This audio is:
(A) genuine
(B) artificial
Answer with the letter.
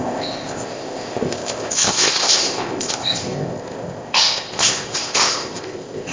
B